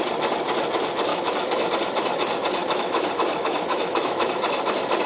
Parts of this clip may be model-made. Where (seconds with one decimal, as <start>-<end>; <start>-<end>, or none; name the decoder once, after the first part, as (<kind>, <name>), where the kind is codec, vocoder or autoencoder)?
1.1-1.7 (autoencoder, DAC-VAE); 2.6-4.3